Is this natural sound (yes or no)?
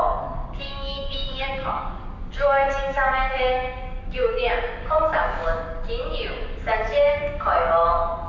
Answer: no